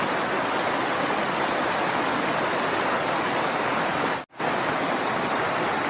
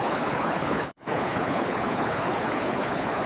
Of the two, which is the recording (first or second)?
first